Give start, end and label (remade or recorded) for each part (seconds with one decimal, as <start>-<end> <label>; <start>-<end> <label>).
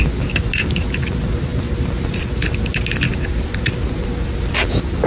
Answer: 0.0-5.1 recorded